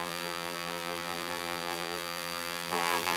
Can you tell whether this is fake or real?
fake